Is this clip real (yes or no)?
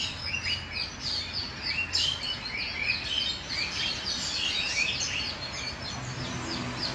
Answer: yes